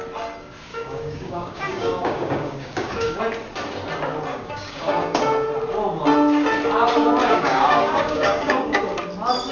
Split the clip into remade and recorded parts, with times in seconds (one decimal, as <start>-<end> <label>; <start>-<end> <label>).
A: 0.0-0.7 recorded; 0.7-3.2 remade; 3.2-4.3 recorded; 4.3-5.2 remade; 5.2-7.2 recorded; 7.2-8.8 remade; 8.8-9.5 recorded